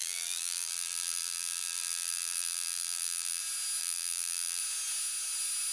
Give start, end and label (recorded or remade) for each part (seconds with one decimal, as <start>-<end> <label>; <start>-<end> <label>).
0.0-3.4 remade; 3.4-3.8 recorded; 3.8-4.6 remade; 4.6-5.7 recorded